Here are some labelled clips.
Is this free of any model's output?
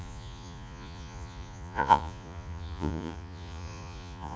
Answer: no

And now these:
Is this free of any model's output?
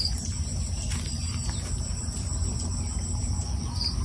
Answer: yes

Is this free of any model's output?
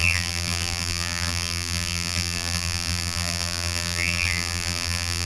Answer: no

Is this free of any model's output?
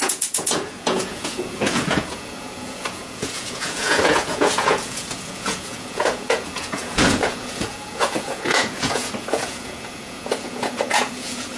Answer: no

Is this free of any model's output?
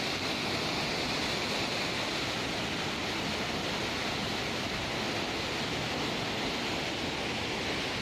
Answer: yes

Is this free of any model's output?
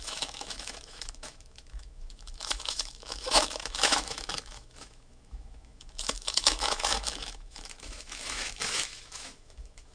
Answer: no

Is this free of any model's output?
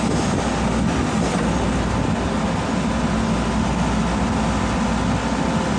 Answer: yes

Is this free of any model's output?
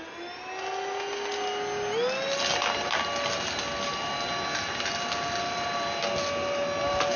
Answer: yes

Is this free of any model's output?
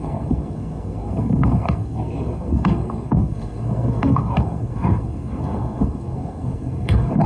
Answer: no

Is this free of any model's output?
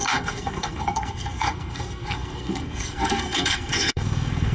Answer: no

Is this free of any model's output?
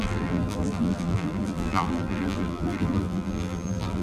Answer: no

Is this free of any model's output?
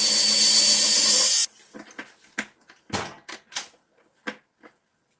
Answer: yes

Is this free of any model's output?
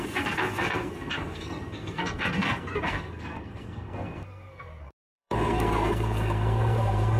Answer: no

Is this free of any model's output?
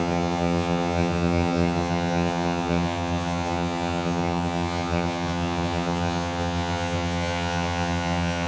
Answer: no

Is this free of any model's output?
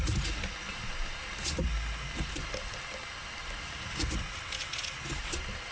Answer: yes